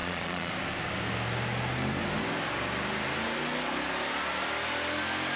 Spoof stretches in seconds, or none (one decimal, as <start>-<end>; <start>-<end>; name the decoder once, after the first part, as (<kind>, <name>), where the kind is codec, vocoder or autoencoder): 0.0-0.5 (vocoder, Vocos)